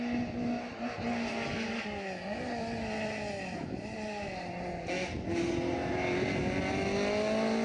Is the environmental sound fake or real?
real